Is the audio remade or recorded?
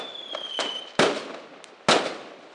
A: recorded